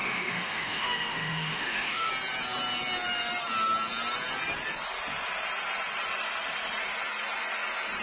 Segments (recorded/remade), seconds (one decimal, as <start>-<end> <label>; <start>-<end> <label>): 0.0-2.1 remade; 2.1-8.0 recorded